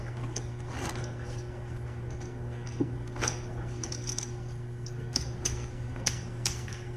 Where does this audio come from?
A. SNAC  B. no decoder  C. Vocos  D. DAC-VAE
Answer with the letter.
A